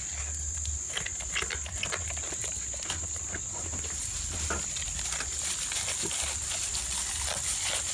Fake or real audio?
real